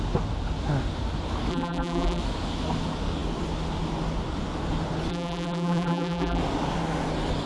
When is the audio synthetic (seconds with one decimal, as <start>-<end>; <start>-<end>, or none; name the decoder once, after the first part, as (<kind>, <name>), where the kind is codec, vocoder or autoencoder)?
1.5-2.2 (vocoder, BigVGAN v2); 5.1-6.4